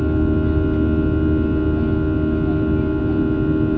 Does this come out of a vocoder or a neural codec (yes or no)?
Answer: no